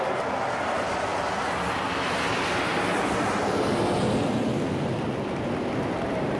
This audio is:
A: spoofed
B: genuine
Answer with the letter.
B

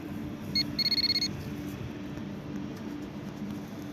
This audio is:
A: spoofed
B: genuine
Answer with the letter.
B